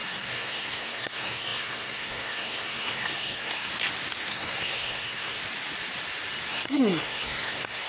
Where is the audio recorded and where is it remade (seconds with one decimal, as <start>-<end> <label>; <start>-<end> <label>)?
0.0-3.7 remade; 3.7-4.3 recorded; 4.3-5.4 remade; 5.4-6.5 recorded; 6.5-7.9 remade